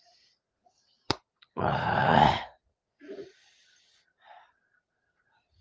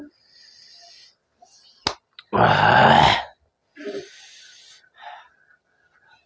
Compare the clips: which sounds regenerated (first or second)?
first